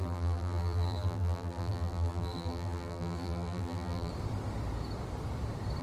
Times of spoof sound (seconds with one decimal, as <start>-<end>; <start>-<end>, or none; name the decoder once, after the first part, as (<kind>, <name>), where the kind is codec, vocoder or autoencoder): 0.0-4.1 (vocoder, BigVGAN v2)